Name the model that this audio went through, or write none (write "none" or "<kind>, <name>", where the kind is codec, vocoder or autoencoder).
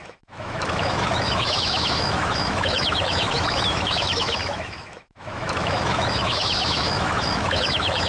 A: autoencoder, DAC-VAE